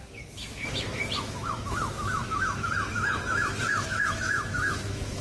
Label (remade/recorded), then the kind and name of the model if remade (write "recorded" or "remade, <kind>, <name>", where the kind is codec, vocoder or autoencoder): remade, autoencoder, DAC-VAE